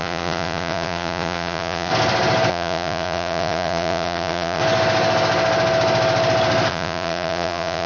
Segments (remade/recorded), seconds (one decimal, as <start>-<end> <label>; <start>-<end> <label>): 0.0-1.9 remade; 1.9-2.5 recorded; 2.5-4.6 remade; 4.6-6.7 recorded; 6.7-7.9 remade